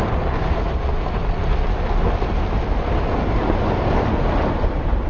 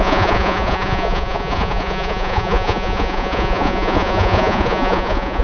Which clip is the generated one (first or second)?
second